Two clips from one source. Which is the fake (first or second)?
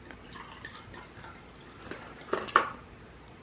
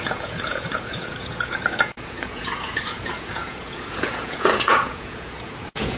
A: second